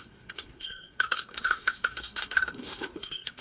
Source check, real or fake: fake